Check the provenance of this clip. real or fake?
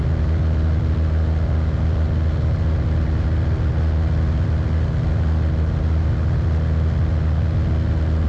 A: real